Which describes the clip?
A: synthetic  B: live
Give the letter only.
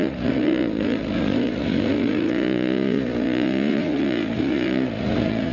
A